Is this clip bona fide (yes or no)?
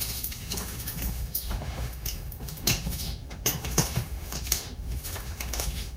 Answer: no